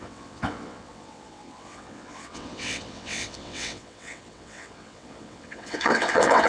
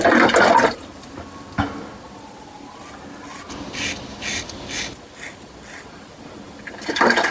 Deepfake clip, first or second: first